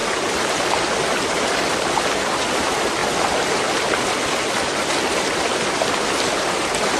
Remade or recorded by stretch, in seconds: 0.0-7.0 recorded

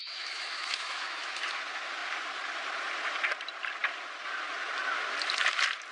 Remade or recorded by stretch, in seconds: 0.0-1.4 remade; 1.4-5.9 recorded

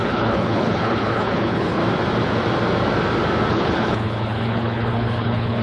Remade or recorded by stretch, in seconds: 0.0-1.8 remade; 1.8-3.5 recorded; 3.5-5.6 remade

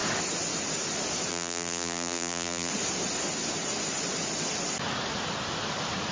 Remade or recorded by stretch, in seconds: 0.0-1.3 recorded; 1.3-2.7 remade; 2.7-6.1 recorded

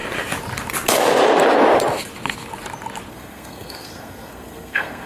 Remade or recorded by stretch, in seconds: 0.0-3.1 recorded; 3.1-5.1 remade

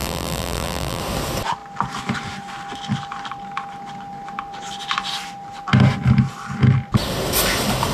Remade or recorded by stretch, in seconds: 0.0-1.0 remade; 1.0-7.9 recorded

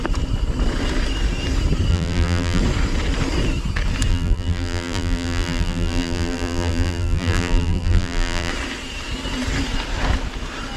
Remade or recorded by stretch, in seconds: 0.0-1.9 recorded; 1.9-2.6 remade; 2.6-4.1 recorded; 4.1-8.5 remade; 8.5-10.8 recorded